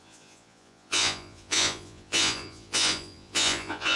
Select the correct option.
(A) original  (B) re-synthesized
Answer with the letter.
B